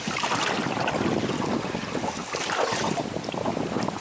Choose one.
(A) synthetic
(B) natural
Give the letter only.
B